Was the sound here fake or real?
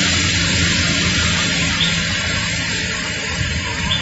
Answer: real